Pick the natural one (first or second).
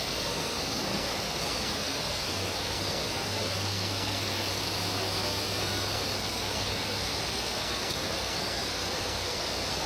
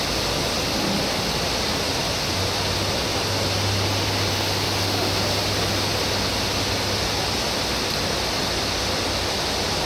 second